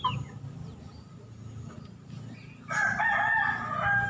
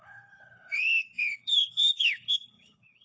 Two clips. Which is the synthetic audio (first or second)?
second